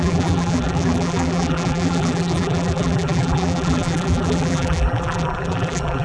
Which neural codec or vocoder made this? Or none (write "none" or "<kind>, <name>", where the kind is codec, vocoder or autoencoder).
vocoder, BigVGAN v2